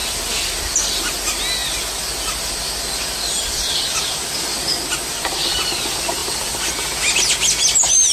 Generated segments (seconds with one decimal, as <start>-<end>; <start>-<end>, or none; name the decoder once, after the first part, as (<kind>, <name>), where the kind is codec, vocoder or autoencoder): none